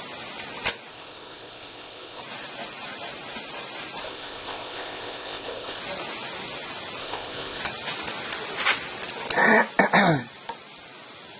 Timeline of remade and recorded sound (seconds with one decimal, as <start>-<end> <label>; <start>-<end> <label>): 0.0-0.9 recorded; 0.9-2.2 remade; 2.2-4.0 recorded; 4.0-5.8 remade; 5.8-7.0 recorded; 7.0-7.6 remade; 7.6-11.4 recorded